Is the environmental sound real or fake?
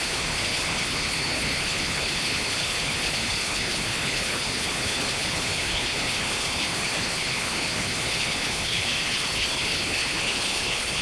fake